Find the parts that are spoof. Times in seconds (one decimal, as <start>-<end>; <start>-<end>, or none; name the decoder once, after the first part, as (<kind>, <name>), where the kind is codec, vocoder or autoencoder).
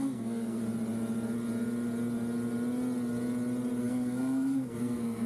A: 0.0-0.6 (codec, SNAC); 3.8-5.3